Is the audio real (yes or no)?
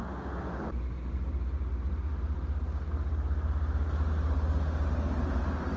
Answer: yes